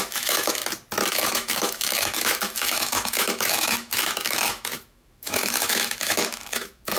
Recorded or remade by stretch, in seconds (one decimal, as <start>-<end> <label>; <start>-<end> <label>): 0.0-0.6 remade; 0.6-1.1 recorded; 1.1-7.0 remade